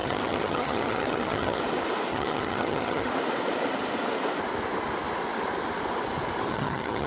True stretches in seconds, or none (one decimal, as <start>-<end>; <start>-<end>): 1.6-2.1; 3.1-6.5